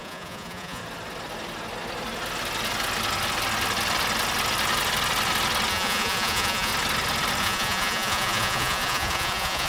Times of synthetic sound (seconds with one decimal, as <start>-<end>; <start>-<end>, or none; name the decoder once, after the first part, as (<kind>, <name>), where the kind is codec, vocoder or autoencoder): 0.0-0.8 (vocoder, Vocos); 5.7-6.7; 7.4-9.7